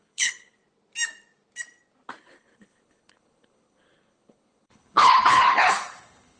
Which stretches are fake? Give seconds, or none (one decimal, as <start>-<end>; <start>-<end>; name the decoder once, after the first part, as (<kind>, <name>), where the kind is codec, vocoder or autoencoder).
0.0-0.6 (codec, HILCodec); 2.2-6.4